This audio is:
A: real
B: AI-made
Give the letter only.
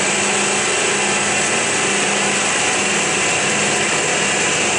A